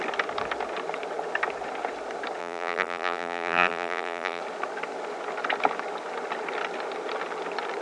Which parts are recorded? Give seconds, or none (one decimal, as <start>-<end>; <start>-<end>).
0.0-2.4; 4.4-7.8